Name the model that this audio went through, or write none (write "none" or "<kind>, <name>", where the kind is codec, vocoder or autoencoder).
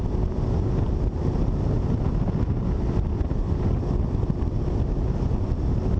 none